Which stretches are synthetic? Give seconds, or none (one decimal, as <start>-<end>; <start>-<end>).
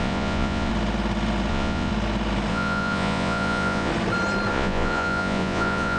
0.0-0.7; 1.5-1.9; 2.5-3.9; 4.5-6.0